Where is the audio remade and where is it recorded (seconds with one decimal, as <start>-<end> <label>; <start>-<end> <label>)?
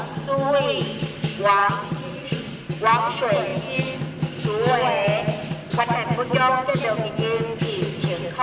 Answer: 0.0-1.6 recorded; 1.6-2.7 remade; 2.7-8.4 recorded